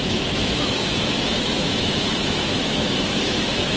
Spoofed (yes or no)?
yes